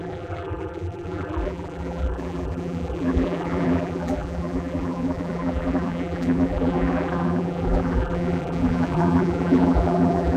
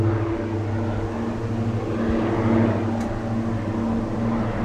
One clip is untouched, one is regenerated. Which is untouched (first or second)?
second